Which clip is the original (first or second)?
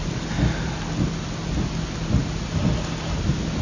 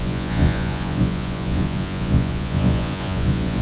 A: first